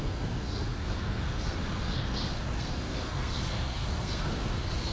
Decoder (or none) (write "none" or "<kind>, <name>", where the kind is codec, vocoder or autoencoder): codec, SNAC